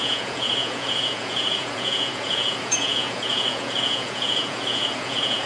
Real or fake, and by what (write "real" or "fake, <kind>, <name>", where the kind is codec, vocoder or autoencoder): fake, vocoder, Vocos